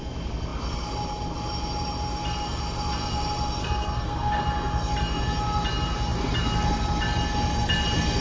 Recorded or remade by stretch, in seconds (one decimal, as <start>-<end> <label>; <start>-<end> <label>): 0.0-3.6 recorded; 3.6-4.4 remade; 4.4-8.2 recorded